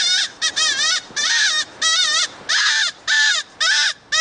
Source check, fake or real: real